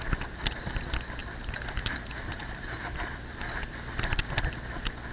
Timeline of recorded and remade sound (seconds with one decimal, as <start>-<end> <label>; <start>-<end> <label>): 0.0-1.2 recorded; 1.2-4.3 remade; 4.3-5.1 recorded